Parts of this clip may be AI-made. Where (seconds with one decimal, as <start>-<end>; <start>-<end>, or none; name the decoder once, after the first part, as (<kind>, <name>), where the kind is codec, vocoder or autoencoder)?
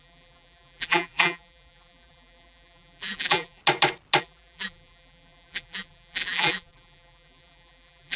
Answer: 0.0-3.6 (vocoder, BigVGAN v2); 4.2-8.2